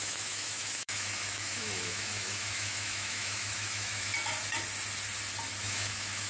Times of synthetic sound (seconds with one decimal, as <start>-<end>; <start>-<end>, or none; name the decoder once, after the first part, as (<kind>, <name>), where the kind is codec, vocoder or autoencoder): 0.0-4.1 (autoencoder, DAC-VAE); 5.6-6.3